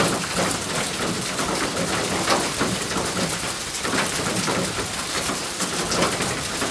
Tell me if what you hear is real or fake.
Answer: real